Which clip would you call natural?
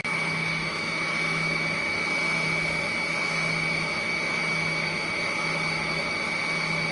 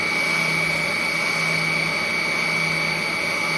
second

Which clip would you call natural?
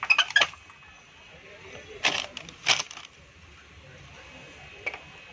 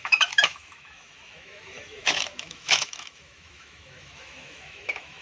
first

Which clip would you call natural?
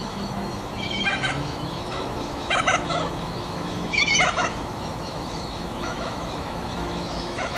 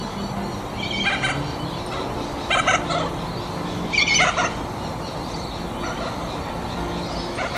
second